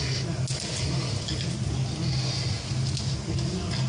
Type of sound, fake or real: real